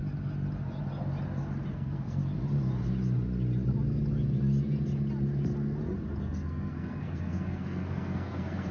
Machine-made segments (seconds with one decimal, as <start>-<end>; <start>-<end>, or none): 1.7-2.2; 6.2-8.7